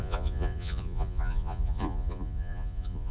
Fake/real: fake